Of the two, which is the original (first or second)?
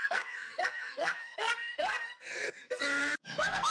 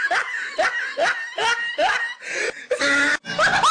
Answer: second